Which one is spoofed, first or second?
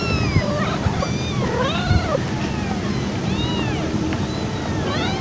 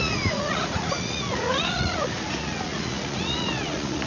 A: second